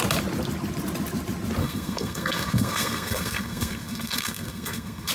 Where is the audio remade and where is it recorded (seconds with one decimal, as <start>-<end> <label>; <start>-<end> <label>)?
0.0-1.6 recorded; 1.6-5.1 remade